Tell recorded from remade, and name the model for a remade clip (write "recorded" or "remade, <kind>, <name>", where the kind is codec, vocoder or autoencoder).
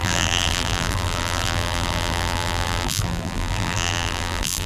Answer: remade, vocoder, BigVGAN v2